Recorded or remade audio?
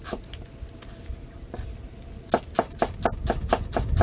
recorded